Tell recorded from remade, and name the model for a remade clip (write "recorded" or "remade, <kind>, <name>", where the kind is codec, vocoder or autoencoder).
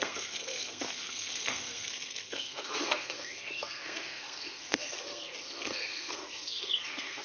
remade, codec, SNAC